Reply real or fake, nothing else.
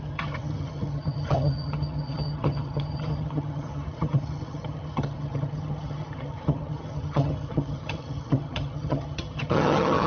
fake